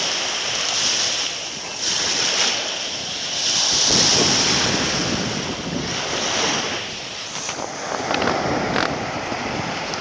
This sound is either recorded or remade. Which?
recorded